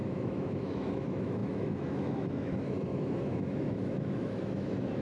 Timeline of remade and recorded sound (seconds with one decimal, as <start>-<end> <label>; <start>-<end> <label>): 0.0-5.0 remade